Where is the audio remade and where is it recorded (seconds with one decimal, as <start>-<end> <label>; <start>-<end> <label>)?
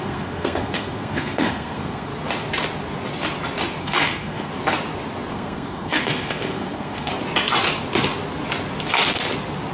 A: 0.0-2.1 remade; 2.1-3.8 recorded; 3.8-4.5 remade; 4.5-5.3 recorded; 5.3-7.1 remade; 7.1-9.7 recorded